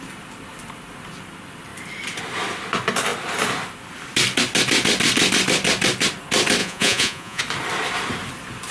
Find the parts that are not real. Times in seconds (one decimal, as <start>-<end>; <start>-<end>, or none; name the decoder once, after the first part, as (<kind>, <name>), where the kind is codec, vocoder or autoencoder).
6.6-7.4 (vocoder, Vocos)